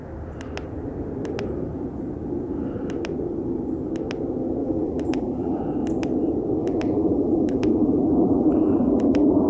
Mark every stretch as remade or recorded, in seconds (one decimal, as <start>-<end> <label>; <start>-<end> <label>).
0.0-4.6 recorded; 4.6-5.6 remade; 5.6-6.6 recorded; 6.6-9.5 remade